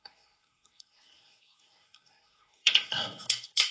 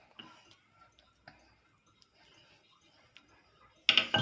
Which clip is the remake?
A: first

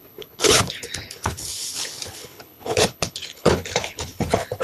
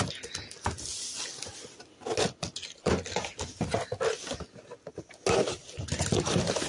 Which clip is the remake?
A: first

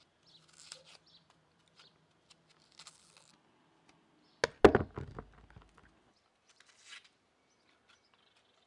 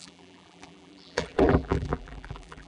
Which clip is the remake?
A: second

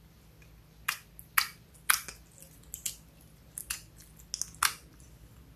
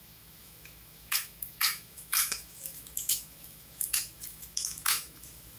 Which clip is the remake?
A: second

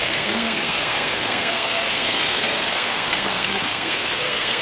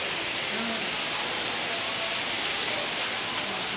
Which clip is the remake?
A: first